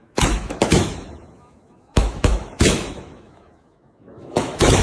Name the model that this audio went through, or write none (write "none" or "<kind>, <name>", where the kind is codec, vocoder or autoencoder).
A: autoencoder, DAC-VAE